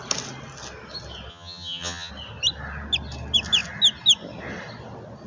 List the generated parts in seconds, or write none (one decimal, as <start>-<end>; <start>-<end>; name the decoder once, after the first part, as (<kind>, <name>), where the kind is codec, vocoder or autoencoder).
1.3-2.1 (vocoder, HiFi-GAN)